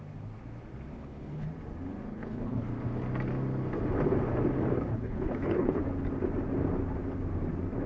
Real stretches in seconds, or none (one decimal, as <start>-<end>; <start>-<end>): 0.0-0.9; 1.5-2.1; 2.7-4.9; 5.8-7.9